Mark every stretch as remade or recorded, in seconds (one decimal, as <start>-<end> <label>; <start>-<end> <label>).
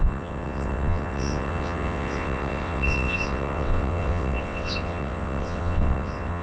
0.0-6.4 remade